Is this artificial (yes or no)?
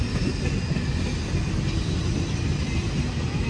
no